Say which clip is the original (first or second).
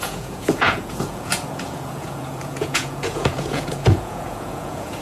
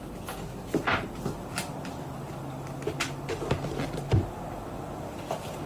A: second